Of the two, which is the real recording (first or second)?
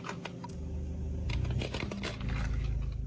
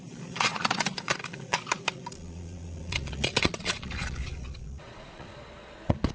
first